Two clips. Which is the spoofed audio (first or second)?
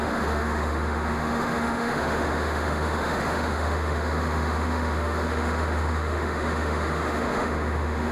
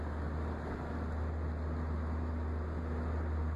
first